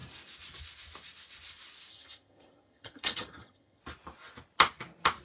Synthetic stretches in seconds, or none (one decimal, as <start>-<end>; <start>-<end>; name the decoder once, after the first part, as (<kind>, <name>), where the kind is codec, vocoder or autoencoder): 1.9-3.8 (vocoder, HiFi-GAN)